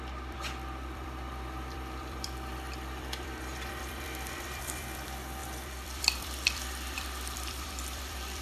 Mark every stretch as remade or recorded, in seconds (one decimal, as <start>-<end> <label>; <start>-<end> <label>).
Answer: 0.0-8.4 remade